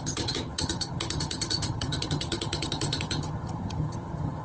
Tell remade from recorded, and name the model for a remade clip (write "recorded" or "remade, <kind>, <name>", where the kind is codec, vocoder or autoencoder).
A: remade, vocoder, HiFi-GAN